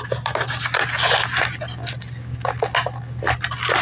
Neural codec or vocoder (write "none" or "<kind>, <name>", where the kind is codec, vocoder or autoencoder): none